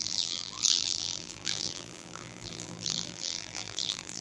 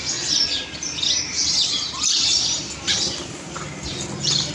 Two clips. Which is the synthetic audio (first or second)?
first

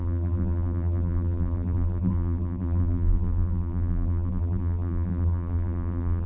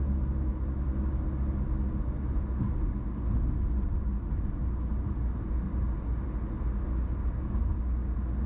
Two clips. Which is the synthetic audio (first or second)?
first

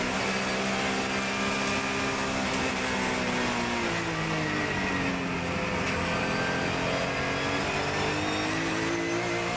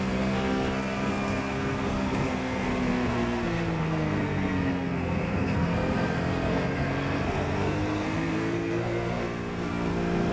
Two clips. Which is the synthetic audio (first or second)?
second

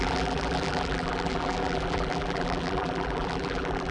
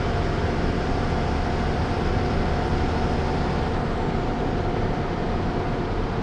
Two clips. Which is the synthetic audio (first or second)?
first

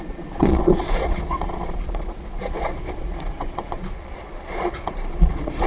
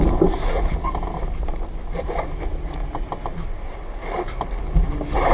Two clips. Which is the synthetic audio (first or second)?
first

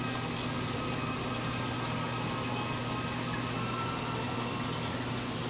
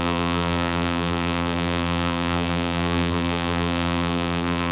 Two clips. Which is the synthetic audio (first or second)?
second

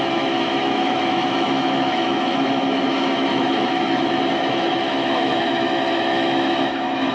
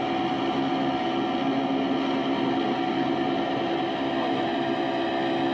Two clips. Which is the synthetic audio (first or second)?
first